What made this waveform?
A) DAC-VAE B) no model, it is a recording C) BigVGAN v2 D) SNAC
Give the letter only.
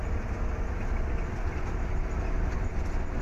B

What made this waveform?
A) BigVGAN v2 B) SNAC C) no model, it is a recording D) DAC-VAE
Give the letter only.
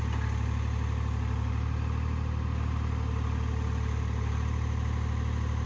C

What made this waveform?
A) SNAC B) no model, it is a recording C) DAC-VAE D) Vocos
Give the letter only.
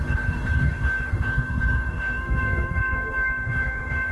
C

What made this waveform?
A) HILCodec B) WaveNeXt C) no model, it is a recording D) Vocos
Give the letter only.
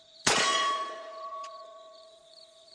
D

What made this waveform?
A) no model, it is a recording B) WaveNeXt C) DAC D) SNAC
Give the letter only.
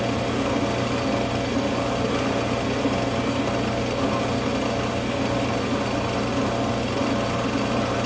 A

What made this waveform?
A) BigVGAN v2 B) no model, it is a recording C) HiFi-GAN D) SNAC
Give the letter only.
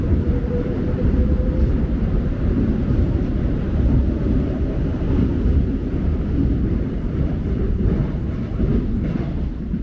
A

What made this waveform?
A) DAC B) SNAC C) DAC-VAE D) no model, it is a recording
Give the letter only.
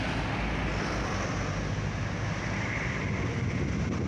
D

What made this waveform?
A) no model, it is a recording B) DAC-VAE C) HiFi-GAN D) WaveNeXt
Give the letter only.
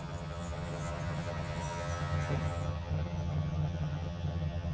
C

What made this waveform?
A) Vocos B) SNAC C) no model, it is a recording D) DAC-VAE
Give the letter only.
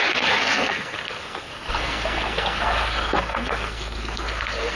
B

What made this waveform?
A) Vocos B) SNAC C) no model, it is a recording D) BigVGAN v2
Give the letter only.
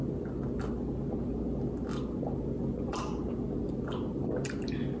C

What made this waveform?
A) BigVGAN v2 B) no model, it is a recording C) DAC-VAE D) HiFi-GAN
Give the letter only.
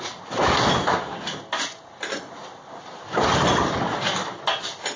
B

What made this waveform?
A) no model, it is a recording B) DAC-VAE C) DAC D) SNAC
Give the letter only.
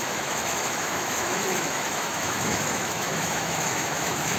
B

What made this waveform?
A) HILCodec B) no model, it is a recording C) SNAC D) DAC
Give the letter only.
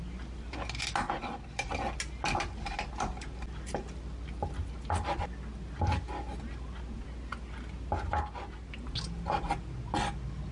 B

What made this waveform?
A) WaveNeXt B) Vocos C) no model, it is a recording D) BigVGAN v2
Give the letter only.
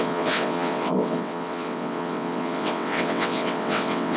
A